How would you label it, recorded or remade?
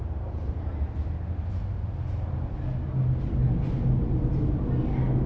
recorded